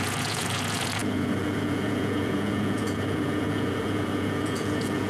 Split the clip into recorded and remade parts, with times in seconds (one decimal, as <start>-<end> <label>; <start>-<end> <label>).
0.0-5.1 remade